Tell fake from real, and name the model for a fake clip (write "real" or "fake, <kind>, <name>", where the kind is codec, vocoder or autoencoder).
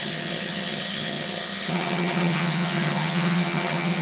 fake, vocoder, HiFi-GAN